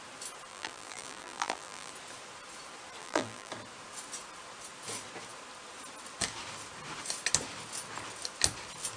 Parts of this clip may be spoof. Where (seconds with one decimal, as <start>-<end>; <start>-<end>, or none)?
0.5-1.9; 3.0-3.5